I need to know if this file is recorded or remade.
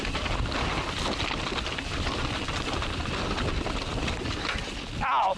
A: recorded